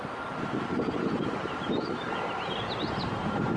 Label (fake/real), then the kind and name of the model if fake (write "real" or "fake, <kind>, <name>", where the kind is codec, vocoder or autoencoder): fake, vocoder, BigVGAN v2